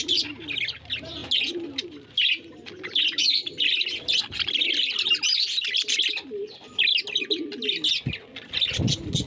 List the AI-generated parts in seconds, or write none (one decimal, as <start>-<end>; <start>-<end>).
none